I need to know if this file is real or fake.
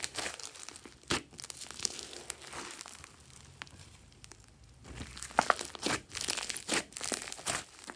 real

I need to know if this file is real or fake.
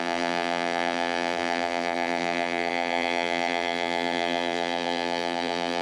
fake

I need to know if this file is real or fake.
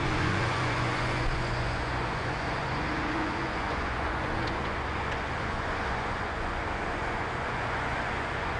fake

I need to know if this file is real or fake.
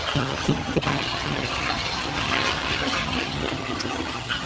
fake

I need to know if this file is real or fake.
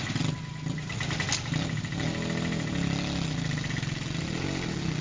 real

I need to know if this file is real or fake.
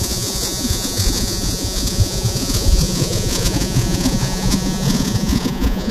fake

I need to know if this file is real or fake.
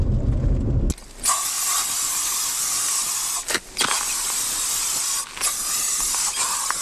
real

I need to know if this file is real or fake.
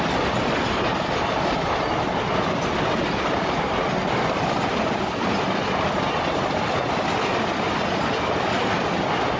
real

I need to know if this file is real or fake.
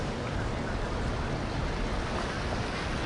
real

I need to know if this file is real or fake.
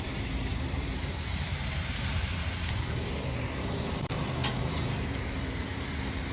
fake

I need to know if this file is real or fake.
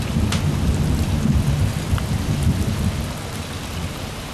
real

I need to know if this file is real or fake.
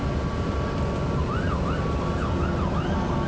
real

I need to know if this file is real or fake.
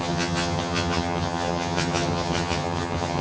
fake